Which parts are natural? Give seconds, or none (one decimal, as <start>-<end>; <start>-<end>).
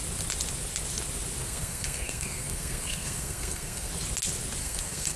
0.0-1.4; 3.9-4.6